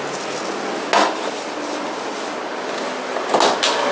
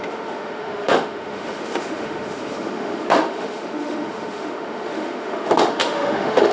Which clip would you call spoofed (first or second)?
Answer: second